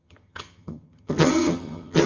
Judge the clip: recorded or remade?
remade